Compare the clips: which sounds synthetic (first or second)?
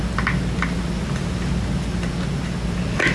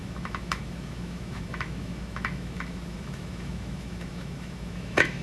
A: second